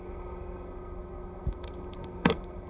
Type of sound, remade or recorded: remade